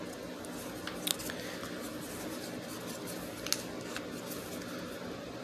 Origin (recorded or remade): recorded